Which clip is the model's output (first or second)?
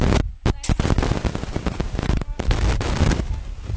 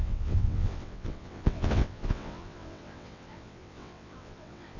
second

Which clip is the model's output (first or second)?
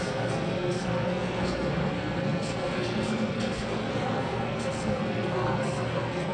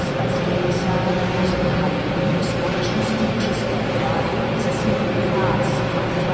first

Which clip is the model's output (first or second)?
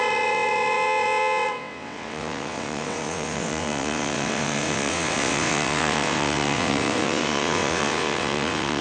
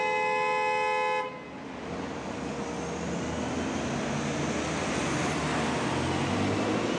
first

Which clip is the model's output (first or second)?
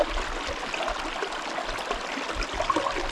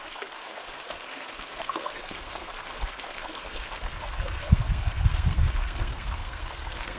second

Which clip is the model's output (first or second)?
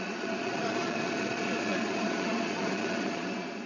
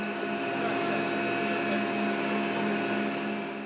first